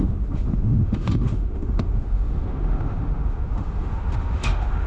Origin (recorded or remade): remade